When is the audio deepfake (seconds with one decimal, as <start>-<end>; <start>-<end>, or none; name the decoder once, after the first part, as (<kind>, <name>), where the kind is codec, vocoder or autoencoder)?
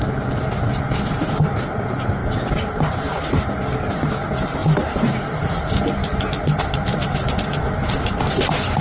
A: 2.2-3.4 (vocoder, BigVGAN v2); 4.6-5.1; 6.0-8.4